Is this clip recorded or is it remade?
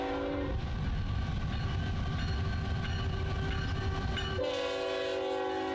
recorded